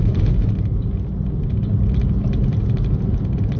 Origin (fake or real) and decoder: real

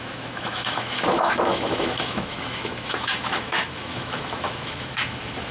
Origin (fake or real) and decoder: fake, autoencoder, DAC-VAE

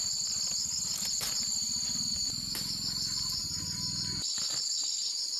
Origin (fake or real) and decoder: real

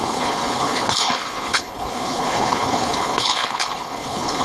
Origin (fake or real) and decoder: fake, codec, HILCodec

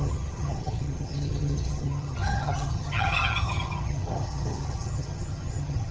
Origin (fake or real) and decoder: fake, vocoder, HiFi-GAN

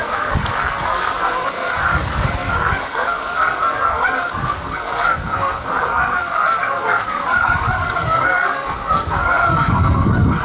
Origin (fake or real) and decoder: fake, codec, SNAC